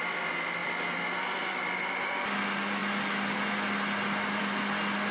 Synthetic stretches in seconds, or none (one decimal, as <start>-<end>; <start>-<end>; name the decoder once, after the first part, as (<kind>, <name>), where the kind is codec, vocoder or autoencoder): none